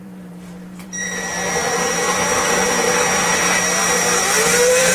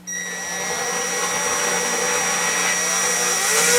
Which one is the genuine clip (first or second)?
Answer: second